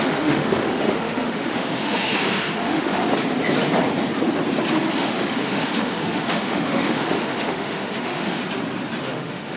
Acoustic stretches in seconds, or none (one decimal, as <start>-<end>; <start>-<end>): 3.0-4.9; 8.4-9.0